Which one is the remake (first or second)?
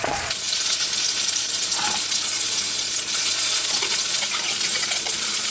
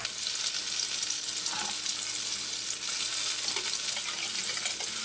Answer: first